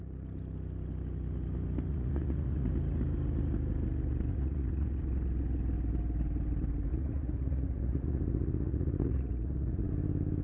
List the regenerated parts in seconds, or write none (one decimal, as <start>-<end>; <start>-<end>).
1.9-2.7; 4.3-5.0; 6.9-9.9